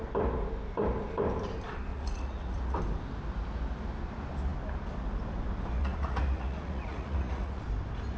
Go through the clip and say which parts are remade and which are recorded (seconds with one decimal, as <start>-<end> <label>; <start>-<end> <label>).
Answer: 0.0-1.9 recorded; 1.9-2.8 remade; 2.8-5.8 recorded; 5.8-7.6 remade; 7.6-8.2 recorded